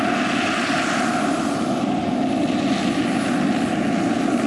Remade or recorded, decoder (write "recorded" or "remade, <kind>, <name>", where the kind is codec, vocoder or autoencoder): recorded